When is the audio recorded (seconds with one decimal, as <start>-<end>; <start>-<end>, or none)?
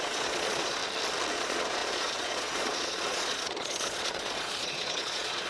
0.8-1.3